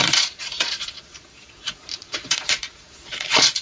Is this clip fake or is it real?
fake